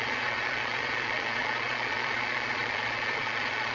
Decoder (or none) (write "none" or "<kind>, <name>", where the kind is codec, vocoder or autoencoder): vocoder, Vocos